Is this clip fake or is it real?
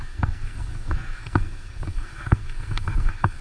fake